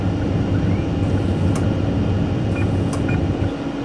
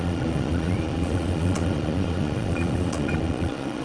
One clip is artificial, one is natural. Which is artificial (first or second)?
second